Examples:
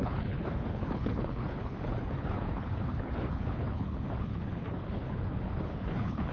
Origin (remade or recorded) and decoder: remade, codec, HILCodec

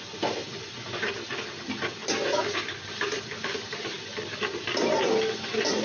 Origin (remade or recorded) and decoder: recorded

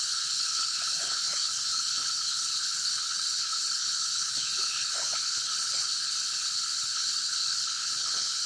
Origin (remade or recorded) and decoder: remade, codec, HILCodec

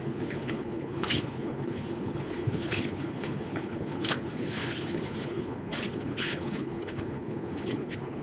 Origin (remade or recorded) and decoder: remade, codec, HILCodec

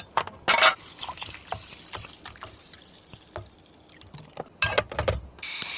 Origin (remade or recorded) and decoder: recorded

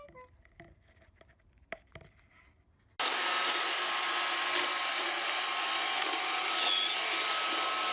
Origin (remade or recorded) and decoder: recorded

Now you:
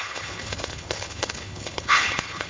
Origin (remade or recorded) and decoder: remade, codec, HILCodec